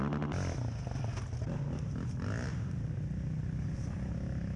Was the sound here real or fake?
real